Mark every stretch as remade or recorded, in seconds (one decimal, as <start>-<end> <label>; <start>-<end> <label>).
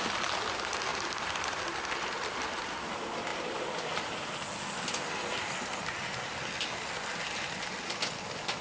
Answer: 0.0-0.9 recorded; 0.9-1.6 remade; 1.6-3.3 recorded; 3.3-4.3 remade; 4.3-8.6 recorded